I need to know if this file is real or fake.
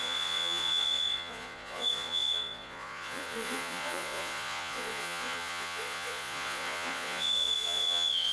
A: fake